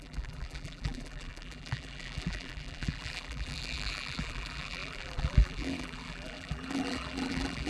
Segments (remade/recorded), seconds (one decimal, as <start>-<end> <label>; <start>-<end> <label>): 0.0-7.7 remade